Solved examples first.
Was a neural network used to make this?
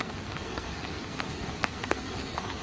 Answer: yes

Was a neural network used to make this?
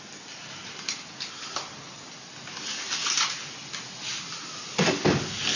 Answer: no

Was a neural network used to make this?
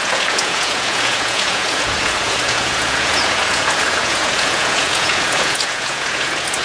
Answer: yes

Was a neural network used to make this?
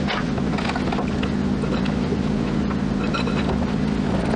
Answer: no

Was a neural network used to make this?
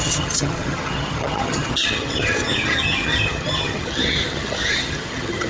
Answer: yes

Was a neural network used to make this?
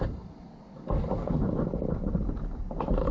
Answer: yes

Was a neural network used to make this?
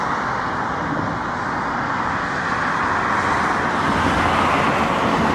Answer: no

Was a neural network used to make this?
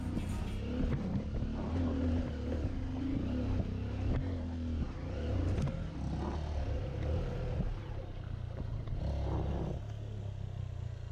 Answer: no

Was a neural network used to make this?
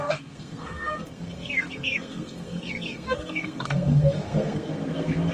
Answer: yes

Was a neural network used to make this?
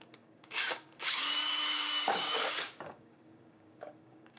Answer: yes